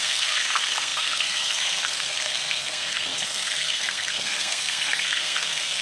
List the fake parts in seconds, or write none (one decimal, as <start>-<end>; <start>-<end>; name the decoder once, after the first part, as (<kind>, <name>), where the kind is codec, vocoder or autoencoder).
0.0-5.8 (codec, SNAC)